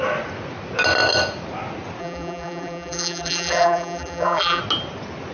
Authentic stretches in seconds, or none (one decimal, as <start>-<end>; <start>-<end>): 0.0-2.0; 4.6-5.3